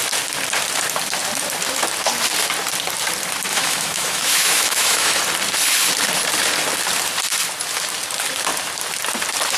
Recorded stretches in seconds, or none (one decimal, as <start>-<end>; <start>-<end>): 0.0-3.5; 5.2-9.6